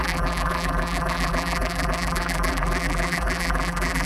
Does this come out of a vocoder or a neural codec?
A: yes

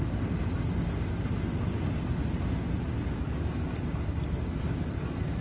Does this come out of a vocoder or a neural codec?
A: no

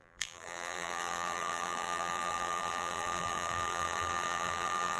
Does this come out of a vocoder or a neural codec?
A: yes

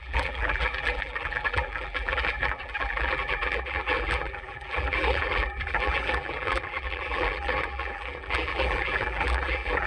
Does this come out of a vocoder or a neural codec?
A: yes